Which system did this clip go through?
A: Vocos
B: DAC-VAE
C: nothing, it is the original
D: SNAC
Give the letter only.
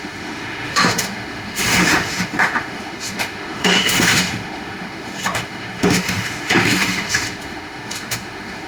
B